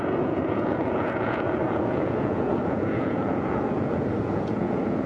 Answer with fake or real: fake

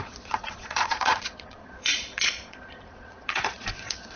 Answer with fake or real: fake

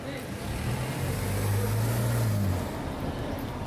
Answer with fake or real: real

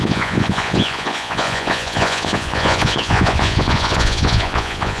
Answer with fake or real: fake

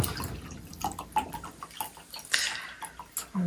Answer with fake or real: real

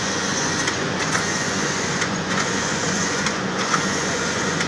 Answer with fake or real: fake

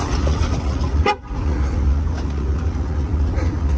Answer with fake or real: fake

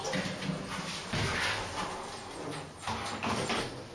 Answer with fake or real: real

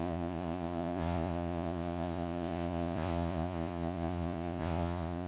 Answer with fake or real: fake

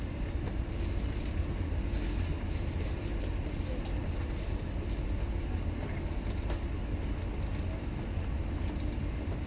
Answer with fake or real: real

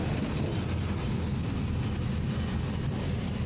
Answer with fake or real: real